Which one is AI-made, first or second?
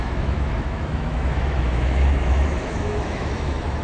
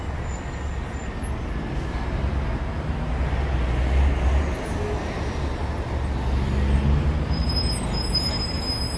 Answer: first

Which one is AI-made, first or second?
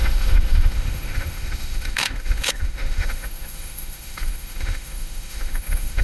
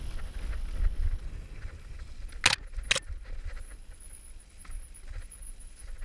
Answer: first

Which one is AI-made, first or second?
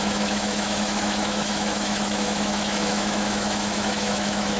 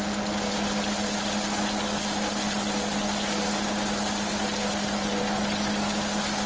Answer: first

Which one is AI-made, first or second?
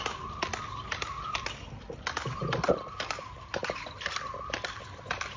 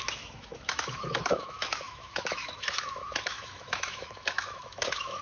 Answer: second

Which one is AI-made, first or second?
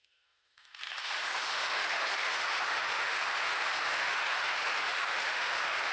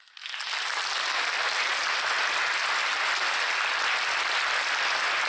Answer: first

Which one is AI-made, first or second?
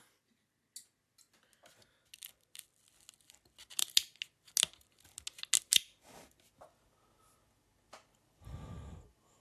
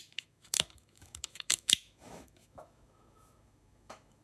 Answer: second